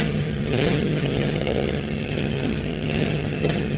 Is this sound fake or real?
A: fake